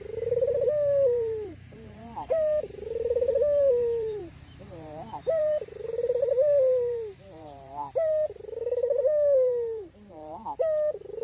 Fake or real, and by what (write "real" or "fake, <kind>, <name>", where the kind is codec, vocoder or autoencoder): fake, vocoder, BigVGAN v2